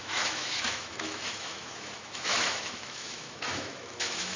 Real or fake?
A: fake